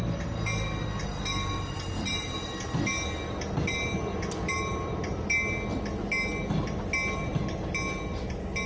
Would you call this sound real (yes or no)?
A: yes